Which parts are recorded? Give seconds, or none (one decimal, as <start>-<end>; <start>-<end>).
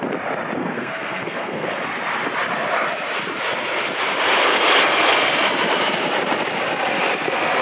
0.0-0.6; 1.7-7.6